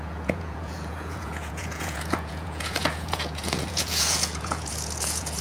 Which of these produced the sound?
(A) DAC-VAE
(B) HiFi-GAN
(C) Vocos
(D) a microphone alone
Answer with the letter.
C